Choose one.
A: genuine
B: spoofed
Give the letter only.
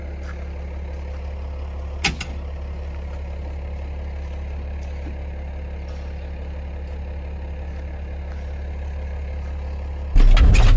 A